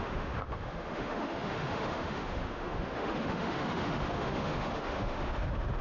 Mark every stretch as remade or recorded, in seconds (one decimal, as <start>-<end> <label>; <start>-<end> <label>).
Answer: 0.0-5.8 remade